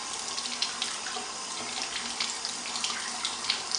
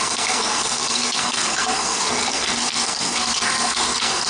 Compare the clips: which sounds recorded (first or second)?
first